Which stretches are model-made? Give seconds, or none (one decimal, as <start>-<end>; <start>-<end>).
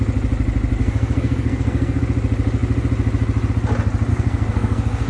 0.8-2.0; 4.1-5.1